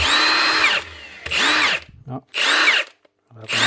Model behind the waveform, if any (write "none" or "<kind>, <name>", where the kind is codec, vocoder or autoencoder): none